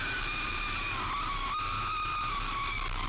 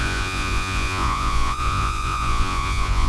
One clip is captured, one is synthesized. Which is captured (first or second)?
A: first